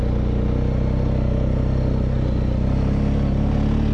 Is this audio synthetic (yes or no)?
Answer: no